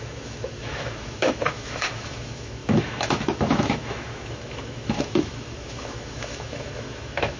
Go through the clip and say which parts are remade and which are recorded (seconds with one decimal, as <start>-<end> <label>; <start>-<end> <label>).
0.0-7.4 remade